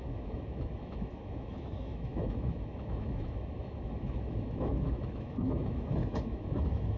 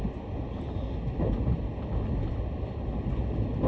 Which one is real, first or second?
second